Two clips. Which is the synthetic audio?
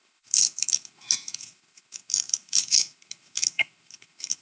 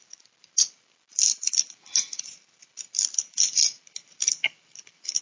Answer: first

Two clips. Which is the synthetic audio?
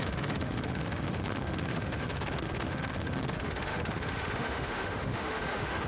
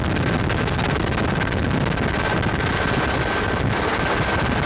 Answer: first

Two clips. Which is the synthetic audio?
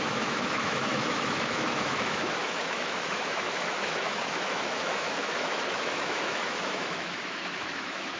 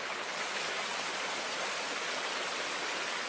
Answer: first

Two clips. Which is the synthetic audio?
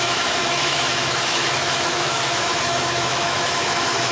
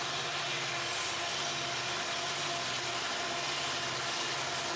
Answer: first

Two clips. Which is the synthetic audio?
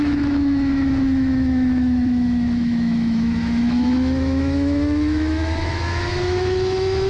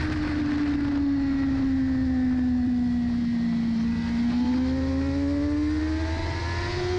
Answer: first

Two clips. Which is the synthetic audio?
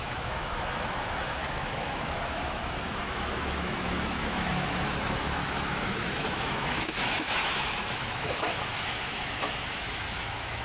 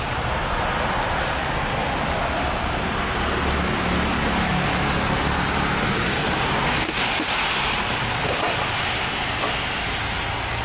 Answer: first